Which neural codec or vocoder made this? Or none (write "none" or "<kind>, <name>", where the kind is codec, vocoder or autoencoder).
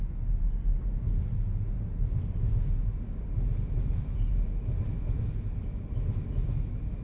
none